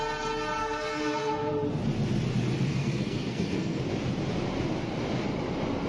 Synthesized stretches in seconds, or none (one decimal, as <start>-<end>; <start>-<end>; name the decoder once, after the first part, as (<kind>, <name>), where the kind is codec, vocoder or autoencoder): 0.6-1.5 (codec, SNAC); 2.7-3.8